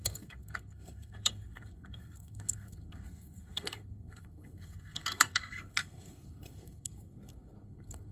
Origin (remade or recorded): remade